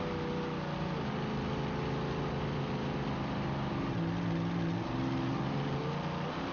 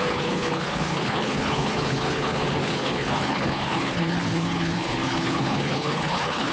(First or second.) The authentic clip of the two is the first